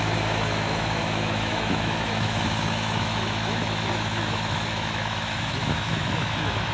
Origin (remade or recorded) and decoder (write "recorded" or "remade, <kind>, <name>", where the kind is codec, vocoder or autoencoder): remade, autoencoder, DAC-VAE